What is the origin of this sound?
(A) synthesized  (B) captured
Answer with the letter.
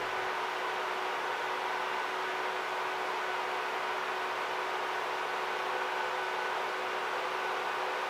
B